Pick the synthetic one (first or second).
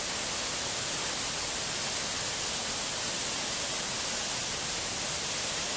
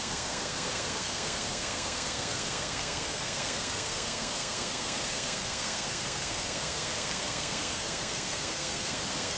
second